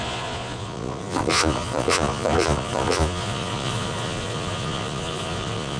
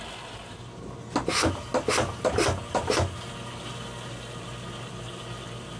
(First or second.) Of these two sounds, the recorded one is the second